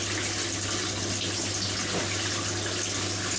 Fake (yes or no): no